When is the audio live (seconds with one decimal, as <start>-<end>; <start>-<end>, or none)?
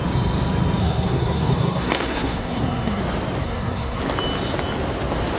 0.0-0.8; 3.0-3.4; 4.0-5.4